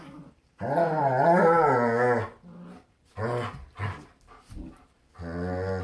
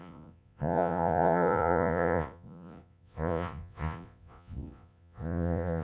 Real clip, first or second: first